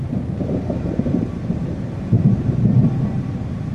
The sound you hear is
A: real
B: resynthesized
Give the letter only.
B